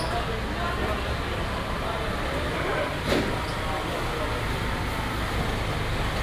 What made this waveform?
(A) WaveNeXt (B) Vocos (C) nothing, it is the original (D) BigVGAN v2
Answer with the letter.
C